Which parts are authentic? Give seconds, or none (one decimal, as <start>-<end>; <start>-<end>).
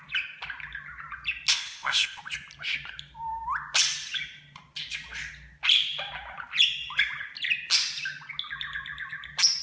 0.0-1.5; 2.2-9.6